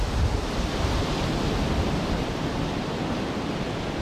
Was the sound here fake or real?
real